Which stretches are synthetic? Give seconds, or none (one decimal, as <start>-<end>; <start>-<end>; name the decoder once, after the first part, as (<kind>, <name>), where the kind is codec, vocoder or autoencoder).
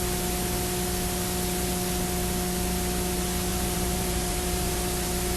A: 3.5-4.7 (vocoder, BigVGAN v2)